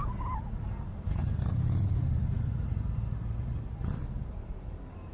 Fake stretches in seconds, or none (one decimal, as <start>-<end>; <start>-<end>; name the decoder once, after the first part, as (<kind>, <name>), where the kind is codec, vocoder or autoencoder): 1.2-4.3 (vocoder, BigVGAN v2)